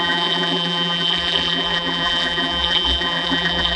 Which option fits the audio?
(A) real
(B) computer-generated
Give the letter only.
B